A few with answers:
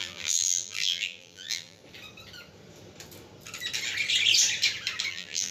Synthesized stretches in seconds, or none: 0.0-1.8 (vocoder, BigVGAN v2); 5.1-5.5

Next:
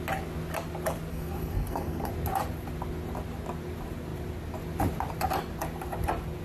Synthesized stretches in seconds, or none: 1.1-2.1 (codec, SNAC)

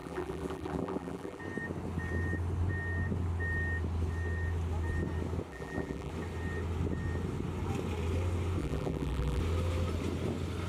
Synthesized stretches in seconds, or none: 0.0-1.4 (vocoder, BigVGAN v2); 5.5-6.1; 8.6-9.4

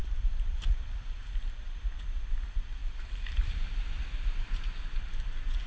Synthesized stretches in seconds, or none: 2.8-4.6 (vocoder, BigVGAN v2)